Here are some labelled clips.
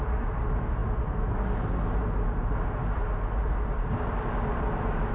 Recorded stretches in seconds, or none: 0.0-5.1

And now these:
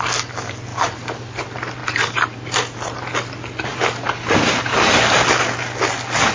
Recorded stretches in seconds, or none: 0.0-0.7; 1.4-1.8; 2.9-3.7; 5.2-6.3

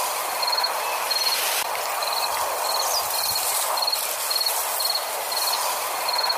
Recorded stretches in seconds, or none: 0.0-6.4

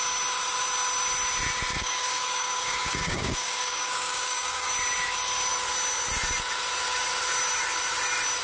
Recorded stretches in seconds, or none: 0.0-1.7; 4.7-8.4

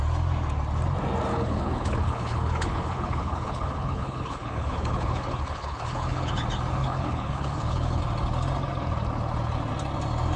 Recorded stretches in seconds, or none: 0.0-1.3; 6.3-6.8; 8.0-10.4

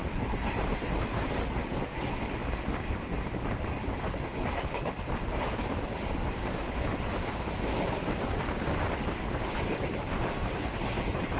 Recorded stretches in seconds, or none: 0.0-2.4; 3.6-4.3; 6.5-11.4